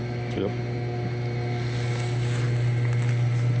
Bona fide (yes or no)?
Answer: yes